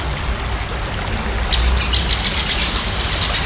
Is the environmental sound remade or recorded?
recorded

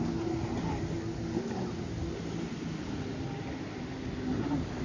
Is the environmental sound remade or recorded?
recorded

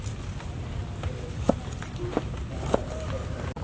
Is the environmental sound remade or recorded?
recorded